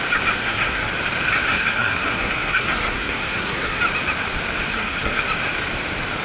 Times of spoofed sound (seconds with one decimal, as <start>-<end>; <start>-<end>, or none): 0.4-0.9; 1.5-3.8; 4.7-5.2